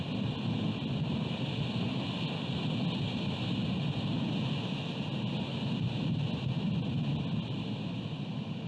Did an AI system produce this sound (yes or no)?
no